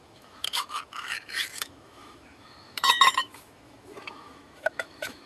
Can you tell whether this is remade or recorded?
remade